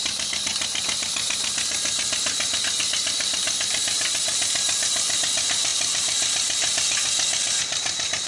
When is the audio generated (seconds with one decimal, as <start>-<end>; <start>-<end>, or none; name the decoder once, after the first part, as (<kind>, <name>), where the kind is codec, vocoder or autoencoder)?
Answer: none